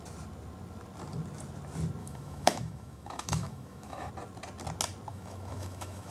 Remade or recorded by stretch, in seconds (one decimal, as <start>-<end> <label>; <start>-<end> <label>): 0.0-2.0 recorded; 2.0-4.1 remade; 4.1-5.1 recorded; 5.1-6.1 remade